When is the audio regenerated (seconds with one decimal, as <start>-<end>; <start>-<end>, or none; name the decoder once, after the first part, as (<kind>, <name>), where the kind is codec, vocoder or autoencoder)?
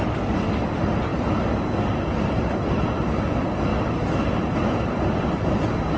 none